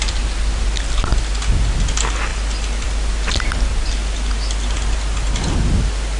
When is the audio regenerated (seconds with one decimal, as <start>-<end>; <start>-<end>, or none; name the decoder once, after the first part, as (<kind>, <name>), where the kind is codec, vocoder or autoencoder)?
none